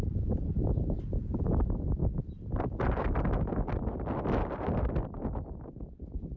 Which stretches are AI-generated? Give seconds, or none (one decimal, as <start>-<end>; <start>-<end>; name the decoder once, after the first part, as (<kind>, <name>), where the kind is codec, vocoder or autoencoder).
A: none

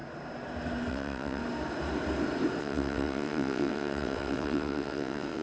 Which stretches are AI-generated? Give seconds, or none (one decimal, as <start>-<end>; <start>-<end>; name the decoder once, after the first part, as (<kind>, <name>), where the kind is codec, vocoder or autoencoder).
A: 0.9-1.4 (vocoder, WaveNeXt); 2.6-5.4

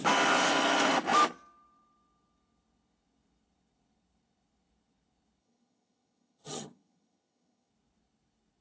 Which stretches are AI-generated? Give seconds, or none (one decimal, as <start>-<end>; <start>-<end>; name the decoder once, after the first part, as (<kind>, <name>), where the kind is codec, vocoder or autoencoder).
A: 5.4-7.7 (vocoder, HiFi-GAN)